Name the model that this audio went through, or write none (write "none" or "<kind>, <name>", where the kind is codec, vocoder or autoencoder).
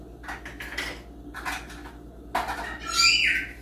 none